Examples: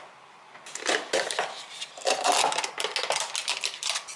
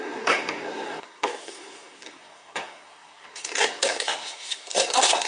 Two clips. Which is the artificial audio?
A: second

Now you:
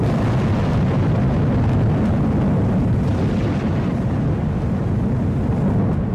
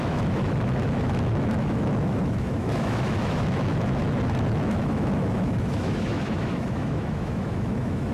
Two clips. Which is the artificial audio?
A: second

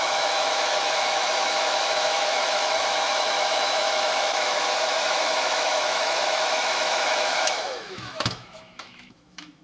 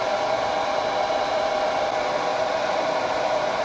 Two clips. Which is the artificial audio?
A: first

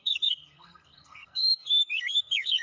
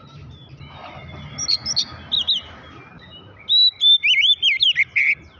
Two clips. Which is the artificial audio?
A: first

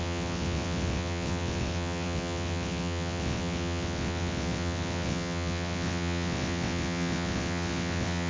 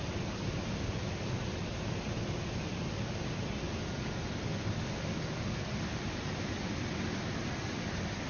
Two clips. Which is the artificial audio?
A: first